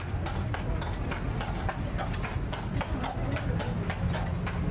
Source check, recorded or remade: recorded